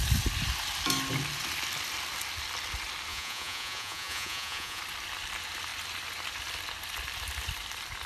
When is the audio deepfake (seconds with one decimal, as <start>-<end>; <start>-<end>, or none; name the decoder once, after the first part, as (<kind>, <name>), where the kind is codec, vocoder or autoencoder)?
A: 3.1-4.8 (vocoder, Vocos)